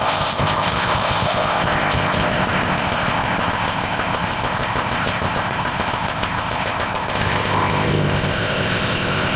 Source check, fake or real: fake